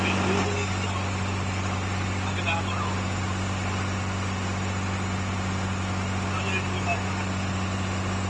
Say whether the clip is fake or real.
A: real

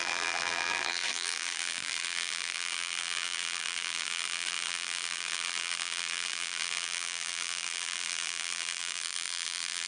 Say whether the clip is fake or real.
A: fake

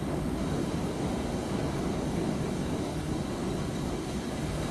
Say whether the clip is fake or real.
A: fake